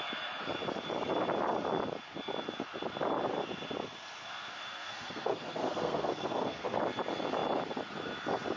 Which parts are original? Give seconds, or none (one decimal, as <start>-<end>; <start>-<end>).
0.0-4.2; 6.8-8.6